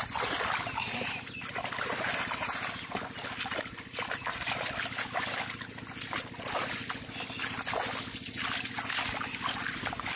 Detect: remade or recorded recorded